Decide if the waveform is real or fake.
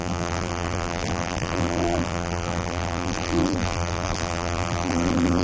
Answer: fake